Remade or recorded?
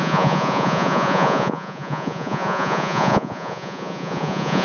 remade